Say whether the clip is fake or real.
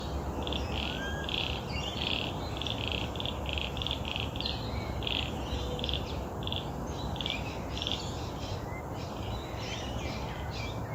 real